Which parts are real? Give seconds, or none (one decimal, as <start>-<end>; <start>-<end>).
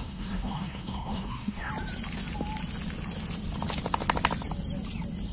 1.7-5.3